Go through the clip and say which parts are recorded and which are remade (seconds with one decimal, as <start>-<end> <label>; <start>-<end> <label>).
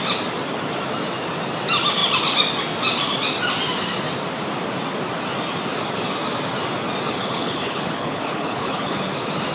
0.0-7.2 recorded; 7.2-9.1 remade; 9.1-9.5 recorded